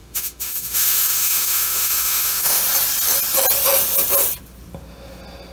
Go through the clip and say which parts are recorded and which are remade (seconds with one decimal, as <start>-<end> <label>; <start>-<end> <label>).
0.0-2.6 remade; 2.6-5.5 recorded